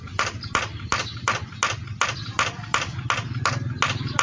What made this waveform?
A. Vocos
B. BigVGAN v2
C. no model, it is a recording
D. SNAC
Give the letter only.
C